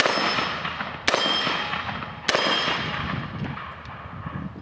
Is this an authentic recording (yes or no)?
yes